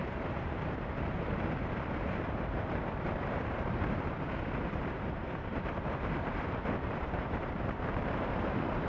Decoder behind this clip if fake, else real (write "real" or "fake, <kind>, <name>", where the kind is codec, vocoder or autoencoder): fake, vocoder, BigVGAN v2